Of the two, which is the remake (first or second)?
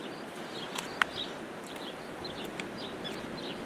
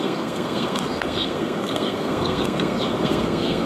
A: second